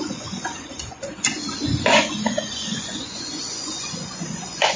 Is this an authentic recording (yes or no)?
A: no